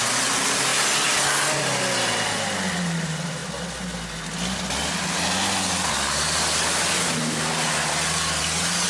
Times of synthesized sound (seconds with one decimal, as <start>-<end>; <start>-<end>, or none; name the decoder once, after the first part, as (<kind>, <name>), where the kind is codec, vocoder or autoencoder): none